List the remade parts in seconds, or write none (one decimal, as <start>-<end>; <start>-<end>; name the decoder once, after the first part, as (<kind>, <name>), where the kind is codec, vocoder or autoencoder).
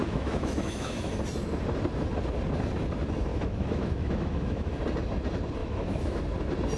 0.0-1.1 (autoencoder, DAC-VAE); 3.3-4.8; 5.6-6.2